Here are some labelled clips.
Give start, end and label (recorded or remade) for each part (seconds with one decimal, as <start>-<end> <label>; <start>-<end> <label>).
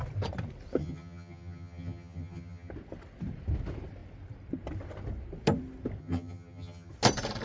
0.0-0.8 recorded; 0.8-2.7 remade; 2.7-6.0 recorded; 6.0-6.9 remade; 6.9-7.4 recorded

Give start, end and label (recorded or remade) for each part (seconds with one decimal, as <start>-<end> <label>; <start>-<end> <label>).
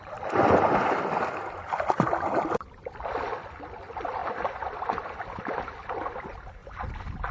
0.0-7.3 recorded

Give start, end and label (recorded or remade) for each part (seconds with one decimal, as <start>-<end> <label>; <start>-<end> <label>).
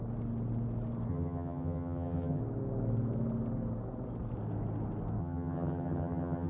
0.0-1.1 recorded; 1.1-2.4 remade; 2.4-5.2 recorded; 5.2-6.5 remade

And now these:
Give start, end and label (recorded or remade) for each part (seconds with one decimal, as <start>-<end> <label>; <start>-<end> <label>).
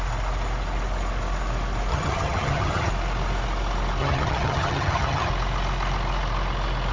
0.0-1.9 recorded; 1.9-2.9 remade; 2.9-4.0 recorded; 4.0-5.3 remade; 5.3-6.9 recorded